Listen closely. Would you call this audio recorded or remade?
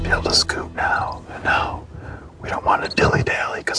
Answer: recorded